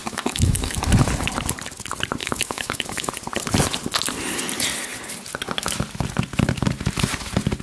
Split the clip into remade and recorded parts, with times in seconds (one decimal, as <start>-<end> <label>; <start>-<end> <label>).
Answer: 0.0-0.8 remade; 0.8-2.2 recorded; 2.2-3.1 remade; 3.1-7.6 recorded